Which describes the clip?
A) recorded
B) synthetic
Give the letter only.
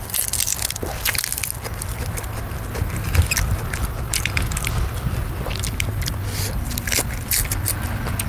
A